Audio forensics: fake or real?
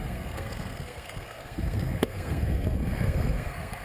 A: fake